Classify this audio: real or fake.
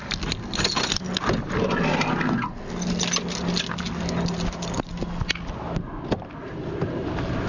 real